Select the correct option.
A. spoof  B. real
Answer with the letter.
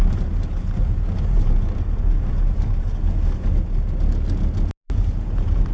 B